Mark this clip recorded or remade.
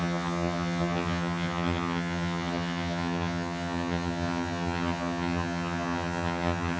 remade